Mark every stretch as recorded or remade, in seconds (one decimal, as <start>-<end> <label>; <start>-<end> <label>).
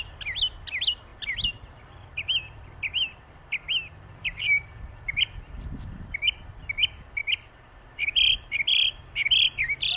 0.0-1.1 recorded; 1.1-6.1 remade; 6.1-7.2 recorded; 7.2-7.8 remade; 7.8-10.0 recorded